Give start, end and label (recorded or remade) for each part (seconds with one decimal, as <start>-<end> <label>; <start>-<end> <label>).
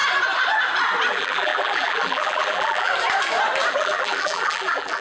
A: 0.0-1.1 recorded; 1.1-2.9 remade; 2.9-3.7 recorded; 3.7-5.0 remade